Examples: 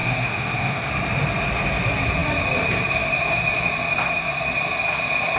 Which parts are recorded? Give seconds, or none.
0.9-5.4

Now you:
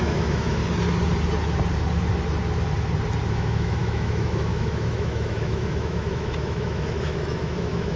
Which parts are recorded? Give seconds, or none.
0.6-3.3